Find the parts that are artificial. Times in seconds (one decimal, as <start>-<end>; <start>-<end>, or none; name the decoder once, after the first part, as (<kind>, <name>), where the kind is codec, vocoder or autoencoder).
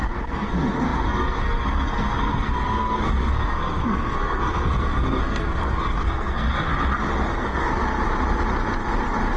0.0-6.7 (codec, SNAC); 7.3-7.8